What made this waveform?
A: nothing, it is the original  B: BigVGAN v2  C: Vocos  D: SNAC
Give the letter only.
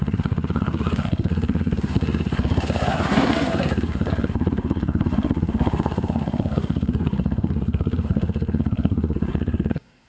D